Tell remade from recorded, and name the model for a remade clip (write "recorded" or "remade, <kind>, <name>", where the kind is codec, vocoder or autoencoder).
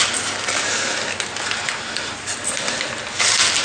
recorded